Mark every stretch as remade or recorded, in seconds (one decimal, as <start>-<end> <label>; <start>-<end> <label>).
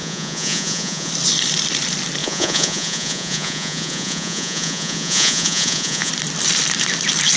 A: 0.0-1.1 remade; 1.1-2.2 recorded; 2.2-6.1 remade; 6.1-7.4 recorded